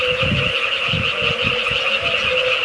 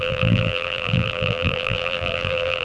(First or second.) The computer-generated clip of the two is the second